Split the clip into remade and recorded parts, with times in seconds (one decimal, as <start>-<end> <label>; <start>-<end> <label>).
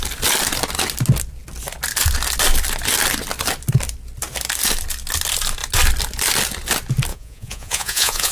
0.0-7.1 recorded; 7.1-8.3 remade